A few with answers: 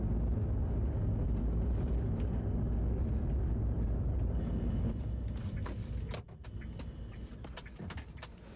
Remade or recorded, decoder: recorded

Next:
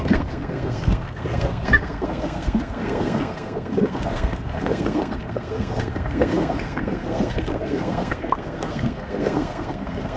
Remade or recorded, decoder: remade, codec, SNAC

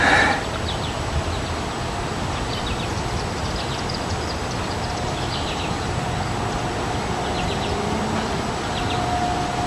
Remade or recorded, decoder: recorded